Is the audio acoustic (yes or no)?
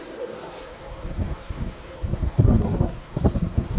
no